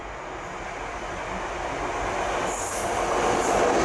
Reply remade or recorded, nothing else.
recorded